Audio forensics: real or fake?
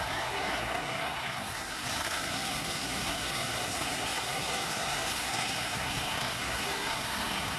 fake